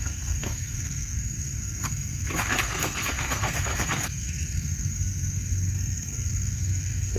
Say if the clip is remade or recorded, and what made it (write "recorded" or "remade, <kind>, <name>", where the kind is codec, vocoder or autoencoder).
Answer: remade, codec, SNAC